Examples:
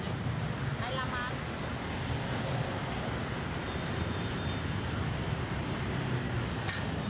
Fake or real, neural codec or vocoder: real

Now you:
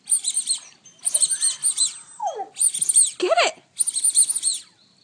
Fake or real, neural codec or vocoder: real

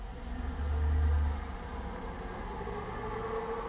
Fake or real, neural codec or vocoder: real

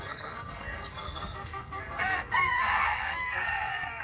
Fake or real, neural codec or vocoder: fake, codec, SNAC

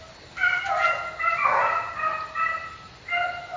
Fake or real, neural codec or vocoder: real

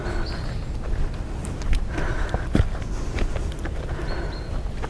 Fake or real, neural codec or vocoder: real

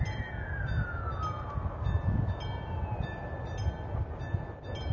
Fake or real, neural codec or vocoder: real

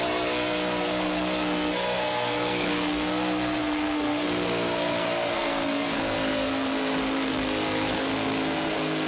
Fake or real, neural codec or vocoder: fake, codec, SNAC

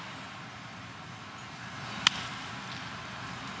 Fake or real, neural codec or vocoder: real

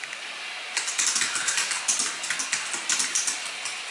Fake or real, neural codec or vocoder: real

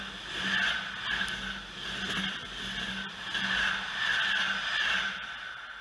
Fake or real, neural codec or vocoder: real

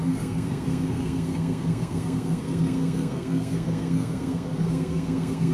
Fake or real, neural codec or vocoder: fake, codec, SNAC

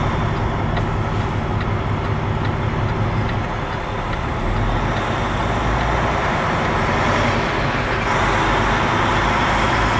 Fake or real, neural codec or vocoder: real